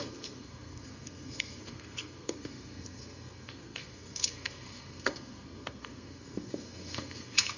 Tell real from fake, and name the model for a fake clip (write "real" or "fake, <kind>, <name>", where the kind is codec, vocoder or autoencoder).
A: fake, codec, SNAC